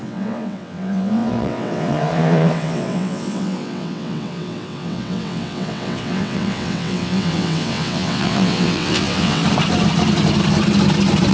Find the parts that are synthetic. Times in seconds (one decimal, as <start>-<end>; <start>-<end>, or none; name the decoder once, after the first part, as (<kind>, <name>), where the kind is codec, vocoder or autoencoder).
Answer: 0.0-9.4 (vocoder, WaveNeXt)